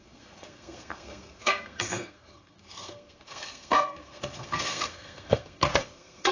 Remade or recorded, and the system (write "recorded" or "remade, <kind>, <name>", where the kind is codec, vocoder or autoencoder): remade, codec, SNAC